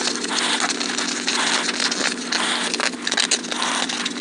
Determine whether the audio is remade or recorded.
recorded